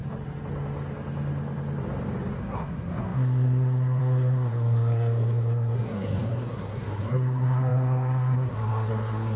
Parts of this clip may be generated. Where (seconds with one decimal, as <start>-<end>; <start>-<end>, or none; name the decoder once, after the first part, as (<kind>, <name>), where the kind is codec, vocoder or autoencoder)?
2.4-9.4 (codec, SNAC)